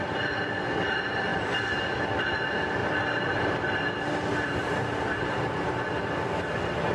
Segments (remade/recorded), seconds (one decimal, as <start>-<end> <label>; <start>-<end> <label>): 0.0-1.3 recorded; 1.3-2.1 remade; 2.1-2.8 recorded; 2.8-5.8 remade; 5.8-6.9 recorded